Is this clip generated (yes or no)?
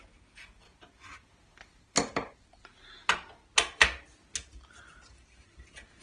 no